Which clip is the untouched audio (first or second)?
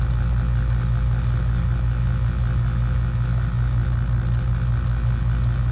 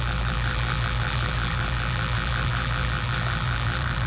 first